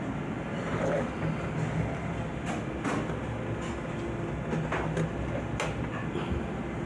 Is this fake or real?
real